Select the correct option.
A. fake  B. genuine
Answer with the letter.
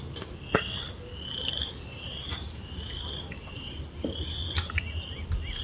B